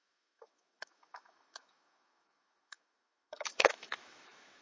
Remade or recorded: remade